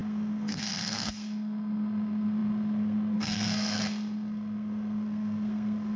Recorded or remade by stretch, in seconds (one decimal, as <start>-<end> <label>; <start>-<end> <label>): 0.0-6.0 remade